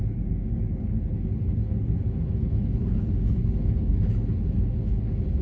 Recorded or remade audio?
remade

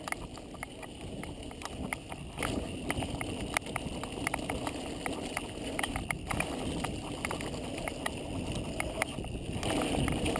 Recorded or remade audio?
recorded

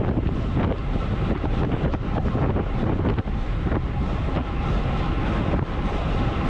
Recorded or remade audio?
recorded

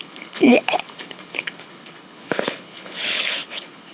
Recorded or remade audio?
remade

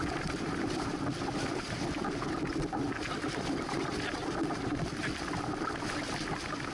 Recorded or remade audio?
recorded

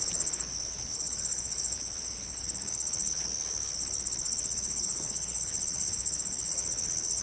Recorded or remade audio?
remade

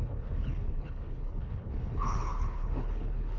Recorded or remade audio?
remade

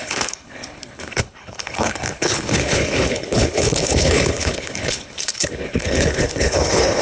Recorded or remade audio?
remade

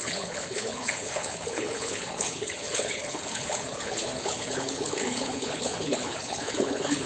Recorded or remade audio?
remade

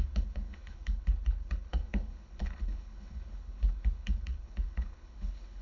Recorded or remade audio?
remade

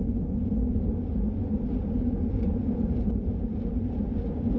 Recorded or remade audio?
recorded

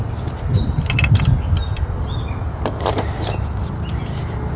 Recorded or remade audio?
recorded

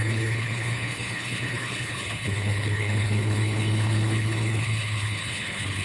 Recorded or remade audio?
remade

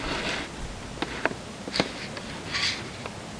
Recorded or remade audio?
recorded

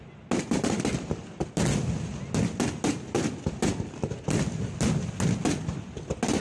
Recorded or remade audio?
recorded